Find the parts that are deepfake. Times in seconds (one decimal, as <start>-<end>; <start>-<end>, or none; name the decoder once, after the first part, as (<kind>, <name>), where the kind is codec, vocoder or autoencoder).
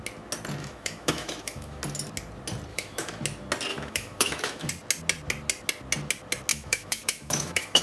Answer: 0.6-1.8 (autoencoder, DAC-VAE); 2.7-3.2; 3.7-4.7; 6.5-7.8